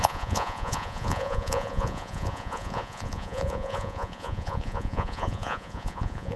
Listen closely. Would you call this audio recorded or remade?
remade